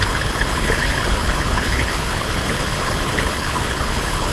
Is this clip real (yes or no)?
no